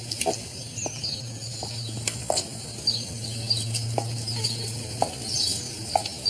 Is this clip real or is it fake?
real